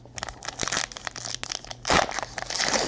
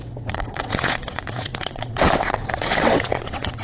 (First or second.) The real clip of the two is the first